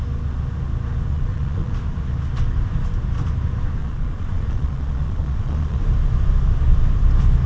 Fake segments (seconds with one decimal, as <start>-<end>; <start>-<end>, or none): 1.1-1.7; 3.8-5.8